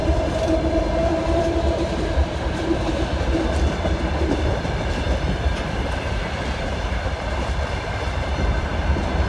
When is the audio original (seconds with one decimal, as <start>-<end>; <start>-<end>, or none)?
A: none